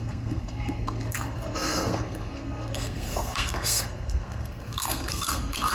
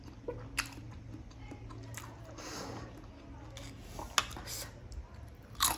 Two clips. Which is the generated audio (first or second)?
first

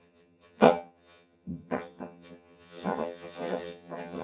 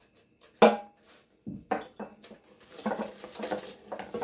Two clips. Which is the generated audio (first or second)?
first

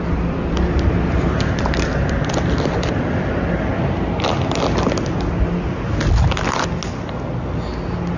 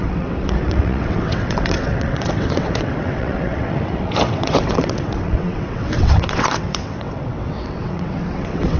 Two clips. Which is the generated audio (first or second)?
second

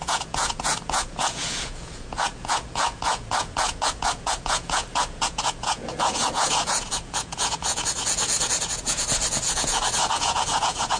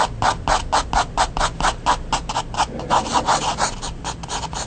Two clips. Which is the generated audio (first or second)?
first